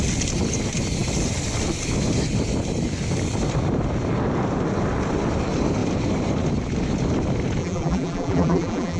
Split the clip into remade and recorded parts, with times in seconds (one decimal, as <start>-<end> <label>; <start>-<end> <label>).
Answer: 0.0-7.6 recorded; 7.6-9.0 remade